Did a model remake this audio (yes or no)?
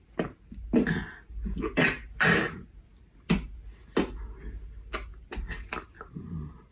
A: no